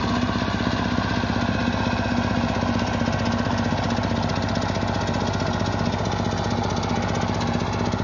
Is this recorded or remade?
recorded